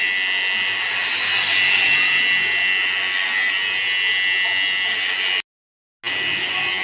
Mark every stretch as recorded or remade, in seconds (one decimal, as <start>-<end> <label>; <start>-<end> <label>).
0.0-6.8 recorded